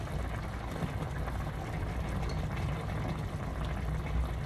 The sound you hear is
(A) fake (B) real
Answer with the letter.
B